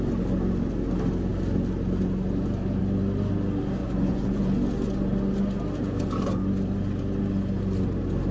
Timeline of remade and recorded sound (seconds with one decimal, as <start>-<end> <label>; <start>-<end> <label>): 0.0-3.8 recorded; 3.8-4.4 remade; 4.4-8.3 recorded